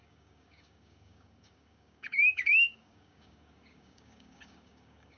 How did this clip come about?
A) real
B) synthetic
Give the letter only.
B